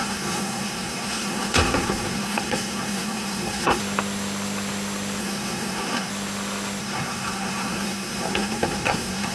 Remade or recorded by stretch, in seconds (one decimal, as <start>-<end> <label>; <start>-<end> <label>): 0.0-3.8 remade; 3.8-5.2 recorded; 5.2-6.1 remade; 6.1-6.8 recorded; 6.8-9.3 remade